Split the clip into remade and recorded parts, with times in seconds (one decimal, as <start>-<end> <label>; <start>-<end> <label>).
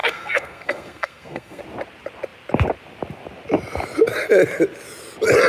0.0-1.6 remade; 1.6-5.5 recorded